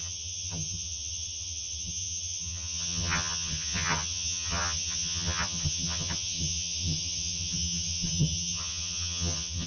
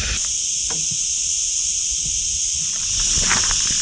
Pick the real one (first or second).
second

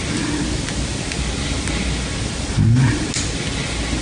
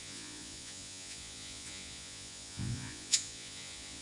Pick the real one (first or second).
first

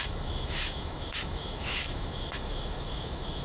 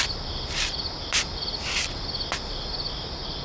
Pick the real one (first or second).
second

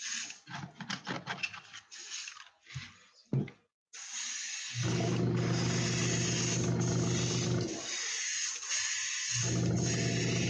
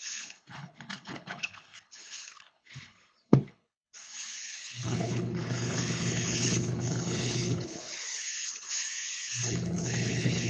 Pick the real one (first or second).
first